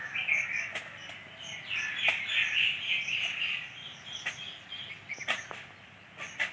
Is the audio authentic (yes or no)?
yes